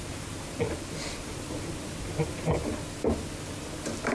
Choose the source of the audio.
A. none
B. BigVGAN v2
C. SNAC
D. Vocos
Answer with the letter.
A